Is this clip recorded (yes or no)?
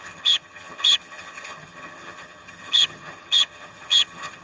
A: no